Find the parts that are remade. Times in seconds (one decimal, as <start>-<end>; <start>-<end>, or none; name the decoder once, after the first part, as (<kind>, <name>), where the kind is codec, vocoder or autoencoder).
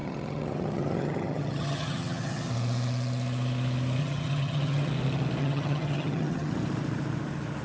0.0-2.5 (vocoder, HiFi-GAN); 4.0-4.9; 5.4-6.5